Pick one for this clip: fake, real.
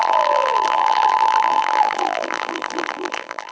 fake